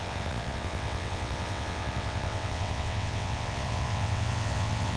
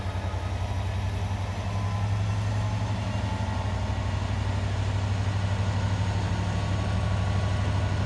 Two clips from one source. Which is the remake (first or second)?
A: first